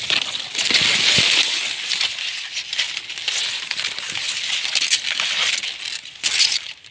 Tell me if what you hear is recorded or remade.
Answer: recorded